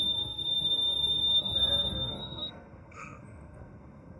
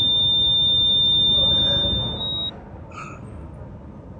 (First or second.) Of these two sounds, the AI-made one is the first